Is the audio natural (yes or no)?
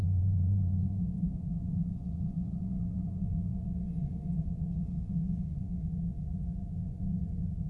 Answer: no